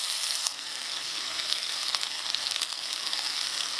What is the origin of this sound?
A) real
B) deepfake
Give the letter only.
B